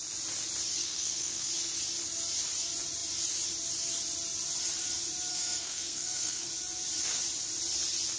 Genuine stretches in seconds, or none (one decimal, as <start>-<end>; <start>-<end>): 0.0-0.8; 1.5-5.3; 6.5-8.2